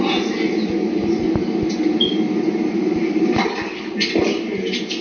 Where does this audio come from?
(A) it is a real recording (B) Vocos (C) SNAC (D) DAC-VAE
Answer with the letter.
A